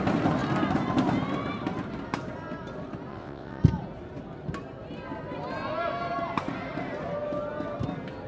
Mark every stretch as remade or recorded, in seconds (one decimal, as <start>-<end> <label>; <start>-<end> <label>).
0.0-3.1 recorded; 3.1-3.6 remade; 3.6-8.3 recorded

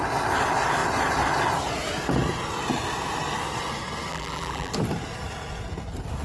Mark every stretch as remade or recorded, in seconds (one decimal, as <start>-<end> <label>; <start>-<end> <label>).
0.0-4.1 recorded; 4.1-4.7 remade; 4.7-6.2 recorded

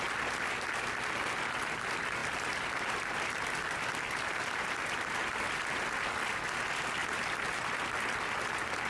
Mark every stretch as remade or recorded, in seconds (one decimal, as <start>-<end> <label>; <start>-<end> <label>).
0.0-2.2 recorded; 2.2-4.7 remade; 4.7-7.0 recorded; 7.0-8.0 remade; 8.0-8.9 recorded